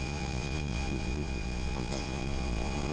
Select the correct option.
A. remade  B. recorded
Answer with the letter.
A